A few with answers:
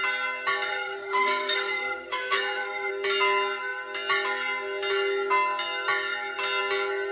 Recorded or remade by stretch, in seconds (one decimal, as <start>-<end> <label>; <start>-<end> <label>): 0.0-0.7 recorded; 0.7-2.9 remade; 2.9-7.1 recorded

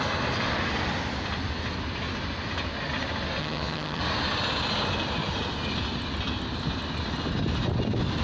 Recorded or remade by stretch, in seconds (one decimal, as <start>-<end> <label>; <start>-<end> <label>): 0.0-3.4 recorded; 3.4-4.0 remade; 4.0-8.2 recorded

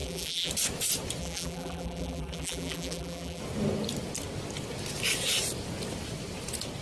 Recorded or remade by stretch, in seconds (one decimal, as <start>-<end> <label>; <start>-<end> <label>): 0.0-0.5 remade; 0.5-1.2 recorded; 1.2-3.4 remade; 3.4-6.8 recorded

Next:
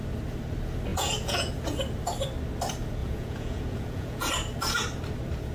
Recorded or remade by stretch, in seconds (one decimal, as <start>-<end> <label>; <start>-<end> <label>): 0.0-0.9 recorded; 0.9-1.5 remade; 1.5-3.0 recorded; 3.0-4.3 remade; 4.3-5.5 recorded